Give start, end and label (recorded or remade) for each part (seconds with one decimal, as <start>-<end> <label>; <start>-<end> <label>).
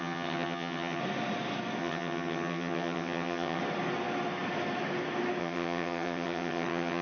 0.0-1.0 remade; 1.0-1.8 recorded; 1.8-3.6 remade; 3.6-5.4 recorded; 5.4-7.0 remade